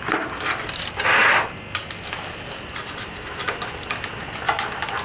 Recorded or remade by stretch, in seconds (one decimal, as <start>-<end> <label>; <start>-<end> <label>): 0.0-5.0 recorded